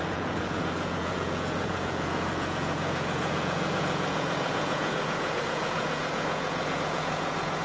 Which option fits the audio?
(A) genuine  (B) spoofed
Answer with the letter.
B